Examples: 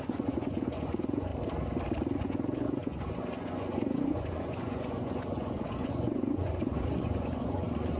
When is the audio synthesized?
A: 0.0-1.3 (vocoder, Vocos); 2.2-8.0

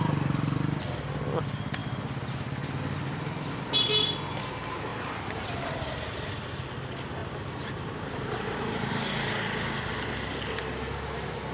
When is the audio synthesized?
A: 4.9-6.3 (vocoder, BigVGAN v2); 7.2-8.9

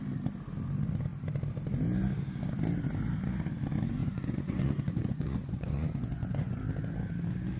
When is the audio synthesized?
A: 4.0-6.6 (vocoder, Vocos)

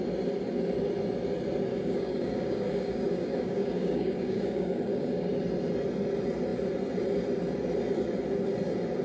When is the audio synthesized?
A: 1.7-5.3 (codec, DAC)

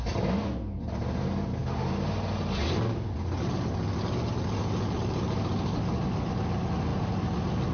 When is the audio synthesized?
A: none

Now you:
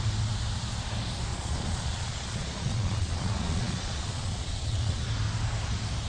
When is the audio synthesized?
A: 1.3-5.0 (vocoder, Vocos)

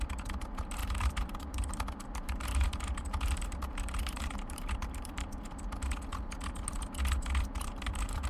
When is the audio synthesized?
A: 0.8-5.2 (vocoder, BigVGAN v2); 7.6-8.3

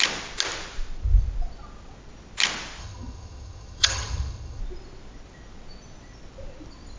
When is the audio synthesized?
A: 2.8-4.6 (vocoder, HiFi-GAN)